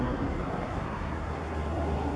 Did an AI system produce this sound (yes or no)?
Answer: yes